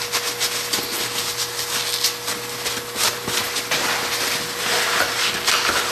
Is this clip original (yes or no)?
yes